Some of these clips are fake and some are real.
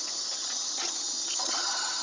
fake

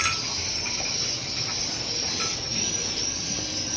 real